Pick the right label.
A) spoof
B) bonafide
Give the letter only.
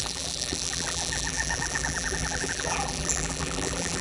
A